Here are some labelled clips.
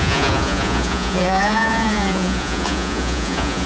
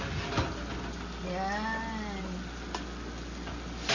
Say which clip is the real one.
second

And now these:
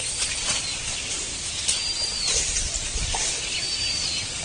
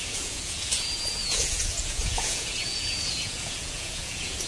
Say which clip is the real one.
first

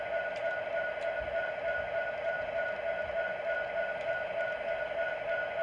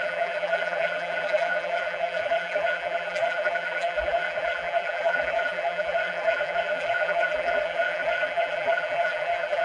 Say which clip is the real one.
first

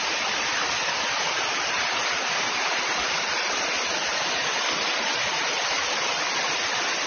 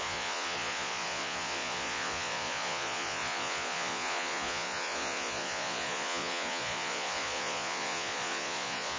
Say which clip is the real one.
first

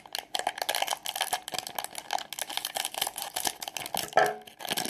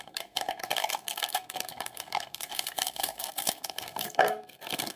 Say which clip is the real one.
first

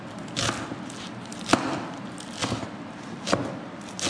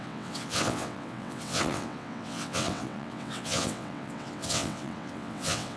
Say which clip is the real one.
first